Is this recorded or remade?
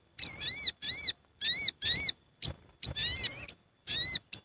recorded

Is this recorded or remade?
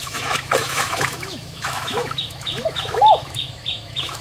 remade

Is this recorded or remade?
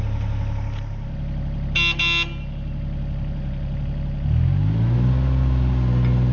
recorded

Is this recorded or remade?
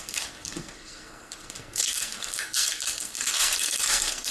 remade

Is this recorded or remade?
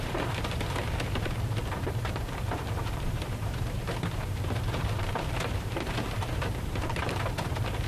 remade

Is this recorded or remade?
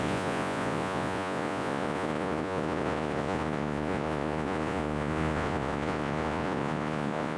remade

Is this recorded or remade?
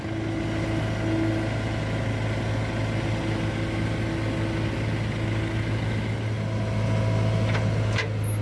recorded